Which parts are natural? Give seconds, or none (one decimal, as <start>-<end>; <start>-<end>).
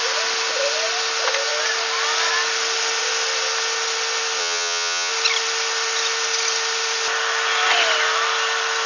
0.0-4.4; 5.1-8.9